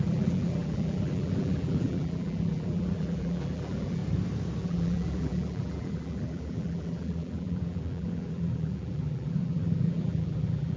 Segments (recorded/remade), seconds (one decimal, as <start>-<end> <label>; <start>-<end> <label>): 0.0-4.0 remade; 4.0-4.6 recorded; 4.6-10.8 remade